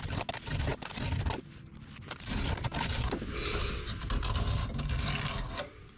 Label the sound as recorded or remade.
recorded